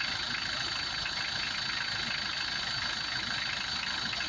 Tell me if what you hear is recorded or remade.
recorded